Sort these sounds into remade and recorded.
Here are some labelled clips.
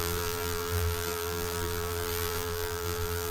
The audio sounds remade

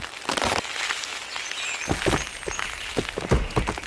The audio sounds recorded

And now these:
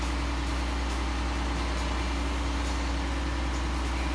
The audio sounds recorded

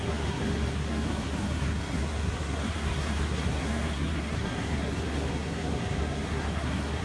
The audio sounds remade